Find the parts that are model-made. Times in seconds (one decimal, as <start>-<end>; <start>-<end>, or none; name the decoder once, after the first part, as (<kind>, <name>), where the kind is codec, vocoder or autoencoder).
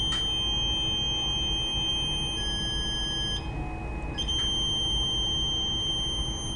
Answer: none